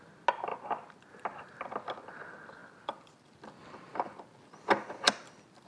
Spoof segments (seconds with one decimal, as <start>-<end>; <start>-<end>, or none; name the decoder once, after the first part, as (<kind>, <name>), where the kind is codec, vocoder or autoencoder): none